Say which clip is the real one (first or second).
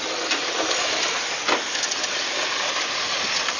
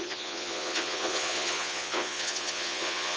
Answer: first